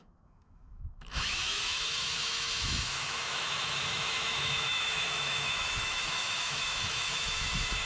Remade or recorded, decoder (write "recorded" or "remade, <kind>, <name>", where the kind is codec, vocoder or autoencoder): remade, autoencoder, DAC-VAE